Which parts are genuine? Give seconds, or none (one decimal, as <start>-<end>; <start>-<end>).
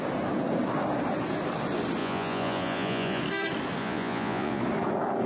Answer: 0.0-2.0; 3.2-3.8; 4.6-5.3